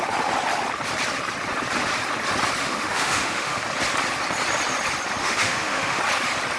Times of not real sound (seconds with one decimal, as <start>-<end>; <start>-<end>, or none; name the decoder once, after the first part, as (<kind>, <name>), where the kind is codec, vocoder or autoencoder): 2.6-3.6 (autoencoder, DAC-VAE); 5.2-6.0